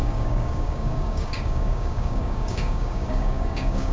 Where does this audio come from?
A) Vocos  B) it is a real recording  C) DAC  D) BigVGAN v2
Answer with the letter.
C